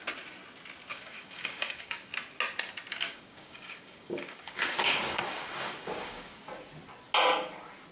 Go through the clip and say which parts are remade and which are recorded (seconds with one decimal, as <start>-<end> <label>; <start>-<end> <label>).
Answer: 0.0-0.9 recorded; 0.9-2.1 remade; 2.1-2.9 recorded; 2.9-6.4 remade; 6.4-7.9 recorded